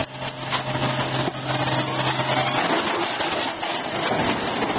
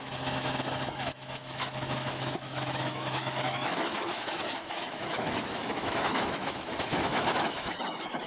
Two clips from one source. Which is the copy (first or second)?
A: second